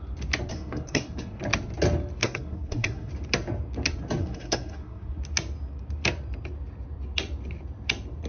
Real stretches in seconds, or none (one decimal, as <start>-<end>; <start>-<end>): 0.0-0.5; 1.4-2.2; 3.1-4.2; 5.2-8.3